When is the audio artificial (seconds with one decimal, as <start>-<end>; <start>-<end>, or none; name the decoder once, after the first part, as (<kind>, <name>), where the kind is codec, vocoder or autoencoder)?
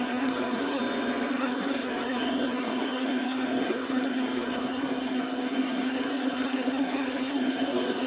0.0-0.8 (codec, SNAC); 1.3-8.1